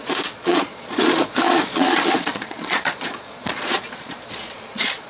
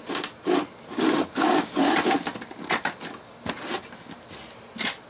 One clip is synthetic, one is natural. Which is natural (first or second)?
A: second